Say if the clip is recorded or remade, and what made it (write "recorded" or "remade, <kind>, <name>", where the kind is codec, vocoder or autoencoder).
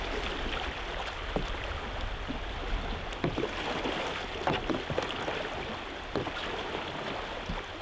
recorded